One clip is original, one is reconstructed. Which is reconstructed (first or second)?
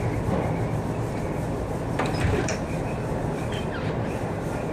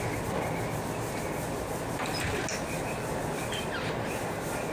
first